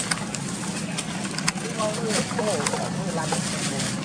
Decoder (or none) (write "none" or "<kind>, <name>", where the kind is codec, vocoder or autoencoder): none